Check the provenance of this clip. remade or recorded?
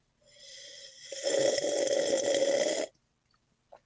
recorded